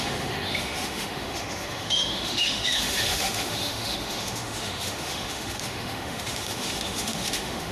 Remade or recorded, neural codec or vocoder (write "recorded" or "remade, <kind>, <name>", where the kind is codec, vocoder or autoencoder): remade, autoencoder, DAC-VAE